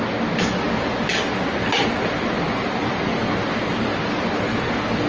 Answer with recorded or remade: recorded